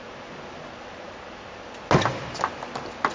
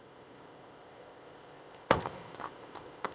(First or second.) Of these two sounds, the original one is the first